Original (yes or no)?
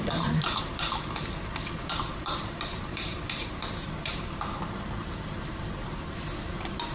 no